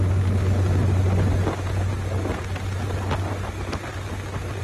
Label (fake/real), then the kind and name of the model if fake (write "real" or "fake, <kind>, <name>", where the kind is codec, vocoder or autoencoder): real